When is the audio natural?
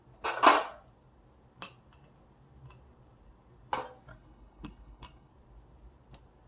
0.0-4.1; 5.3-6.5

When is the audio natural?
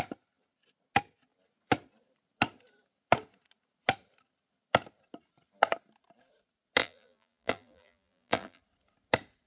0.0-6.8; 8.6-9.5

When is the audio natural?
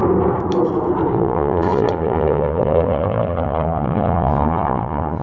0.0-1.1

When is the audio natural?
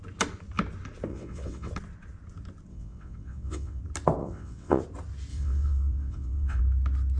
0.0-1.1; 1.7-2.7; 3.8-4.2; 4.8-5.3; 6.6-7.2